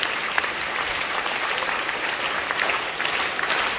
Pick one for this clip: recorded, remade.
recorded